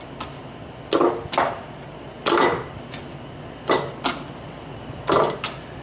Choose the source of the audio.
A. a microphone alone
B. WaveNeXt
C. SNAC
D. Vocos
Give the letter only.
A